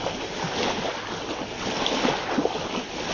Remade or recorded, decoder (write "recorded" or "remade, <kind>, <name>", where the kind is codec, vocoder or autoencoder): recorded